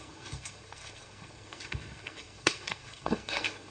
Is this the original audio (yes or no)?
no